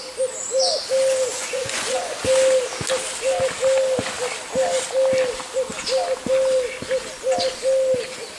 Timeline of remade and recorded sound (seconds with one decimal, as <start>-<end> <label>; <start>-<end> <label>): 0.0-1.3 recorded; 1.3-2.2 remade; 2.2-8.4 recorded